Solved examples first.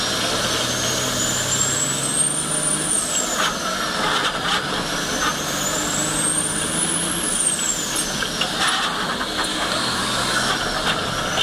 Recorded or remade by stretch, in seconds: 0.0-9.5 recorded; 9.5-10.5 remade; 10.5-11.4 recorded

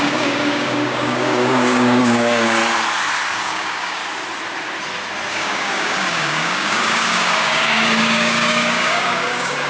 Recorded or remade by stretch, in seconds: 0.0-2.6 remade; 2.6-3.3 recorded; 3.3-4.0 remade; 4.0-5.3 recorded; 5.3-9.7 remade

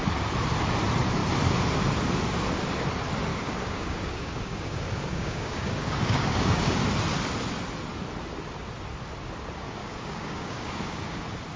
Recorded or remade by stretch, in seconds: 0.0-3.3 recorded; 3.3-6.8 remade; 6.8-9.8 recorded; 9.8-11.2 remade; 11.2-11.6 recorded

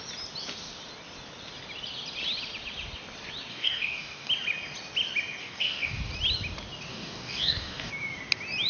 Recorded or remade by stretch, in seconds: 0.0-3.5 recorded; 3.5-4.3 remade; 4.3-5.4 recorded; 5.4-6.1 remade; 6.1-6.9 recorded; 6.9-7.9 remade; 7.9-8.7 recorded

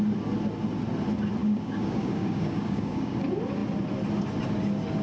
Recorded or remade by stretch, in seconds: 0.0-1.4 recorded; 1.4-3.2 remade; 3.2-5.0 recorded

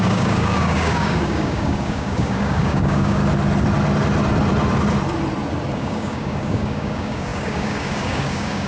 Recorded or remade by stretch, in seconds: 0.0-3.2 remade; 3.2-5.7 recorded; 5.7-8.7 remade

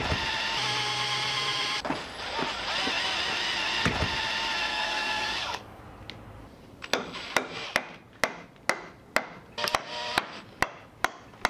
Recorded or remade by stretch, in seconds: 0.0-4.7 recorded; 4.7-5.8 remade; 5.8-11.5 recorded

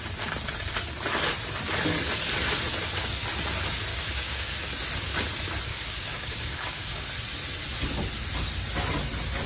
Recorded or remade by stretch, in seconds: 0.0-3.9 recorded; 3.9-4.5 remade; 4.5-5.7 recorded; 5.7-7.1 remade; 7.1-9.5 recorded